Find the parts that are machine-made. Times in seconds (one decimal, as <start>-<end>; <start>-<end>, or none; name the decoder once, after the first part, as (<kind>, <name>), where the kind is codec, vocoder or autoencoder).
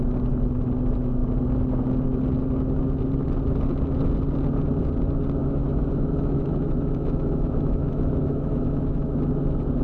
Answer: 5.4-9.2 (autoencoder, DAC-VAE)